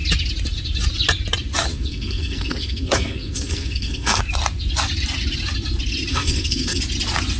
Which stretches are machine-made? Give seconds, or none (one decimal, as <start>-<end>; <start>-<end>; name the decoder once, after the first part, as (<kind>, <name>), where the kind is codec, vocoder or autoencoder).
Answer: 1.7-4.2 (codec, SNAC); 6.1-6.8